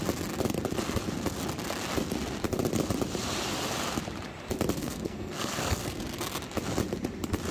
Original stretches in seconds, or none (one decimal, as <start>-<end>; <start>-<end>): 0.0-4.8; 6.0-7.5